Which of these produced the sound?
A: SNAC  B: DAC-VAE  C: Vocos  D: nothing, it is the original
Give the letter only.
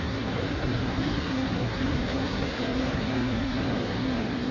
A